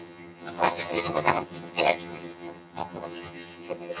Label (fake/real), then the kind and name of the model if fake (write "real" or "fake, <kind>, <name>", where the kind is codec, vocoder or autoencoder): fake, vocoder, HiFi-GAN